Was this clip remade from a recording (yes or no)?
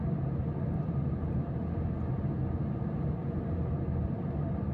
no